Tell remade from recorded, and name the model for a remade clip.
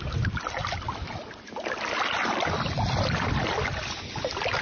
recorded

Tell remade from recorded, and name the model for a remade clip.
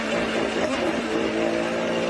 recorded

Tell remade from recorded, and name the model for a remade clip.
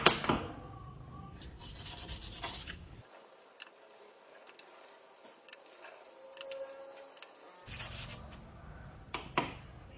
recorded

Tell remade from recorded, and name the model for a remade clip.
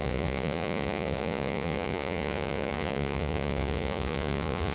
remade, vocoder, Vocos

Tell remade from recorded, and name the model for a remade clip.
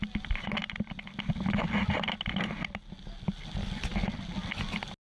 recorded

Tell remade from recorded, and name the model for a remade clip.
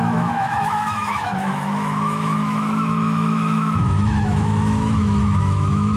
remade, autoencoder, DAC-VAE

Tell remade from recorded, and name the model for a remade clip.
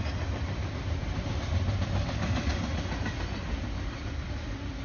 recorded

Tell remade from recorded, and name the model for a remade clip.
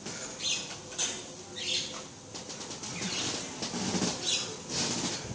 recorded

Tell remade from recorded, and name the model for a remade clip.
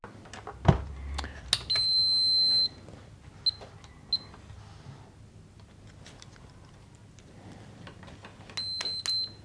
recorded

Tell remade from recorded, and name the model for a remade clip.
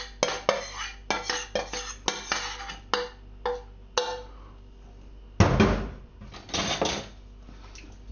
recorded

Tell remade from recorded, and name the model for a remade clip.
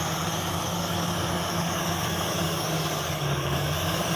remade, codec, DAC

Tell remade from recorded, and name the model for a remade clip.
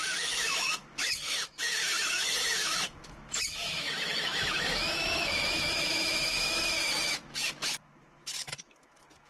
remade, autoencoder, DAC-VAE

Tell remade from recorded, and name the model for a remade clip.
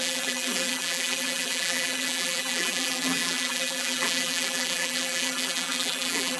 remade, vocoder, BigVGAN v2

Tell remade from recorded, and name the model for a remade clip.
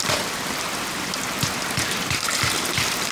remade, vocoder, BigVGAN v2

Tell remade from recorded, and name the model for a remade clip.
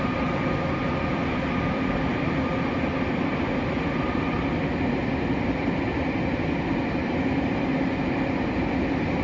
recorded